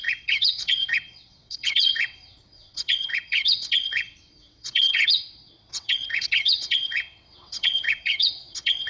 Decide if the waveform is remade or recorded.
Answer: remade